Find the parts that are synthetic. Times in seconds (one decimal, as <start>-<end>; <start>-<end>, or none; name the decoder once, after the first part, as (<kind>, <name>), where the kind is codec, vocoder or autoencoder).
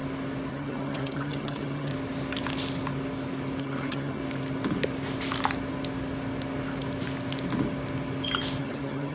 0.5-1.9 (vocoder, HiFi-GAN); 3.6-4.2; 8.6-9.1